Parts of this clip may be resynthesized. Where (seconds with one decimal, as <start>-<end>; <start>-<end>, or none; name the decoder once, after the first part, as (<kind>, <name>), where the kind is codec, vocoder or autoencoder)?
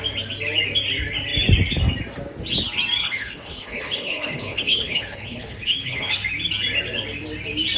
3.0-6.1 (codec, HILCodec)